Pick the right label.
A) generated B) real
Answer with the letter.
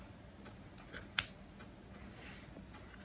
B